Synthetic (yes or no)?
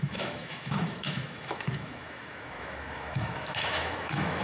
yes